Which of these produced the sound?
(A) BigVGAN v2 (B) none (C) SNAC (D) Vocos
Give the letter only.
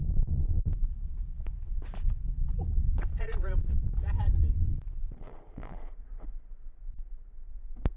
D